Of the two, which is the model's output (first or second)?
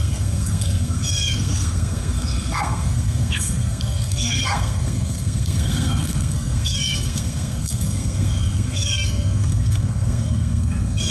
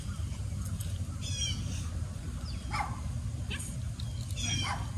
first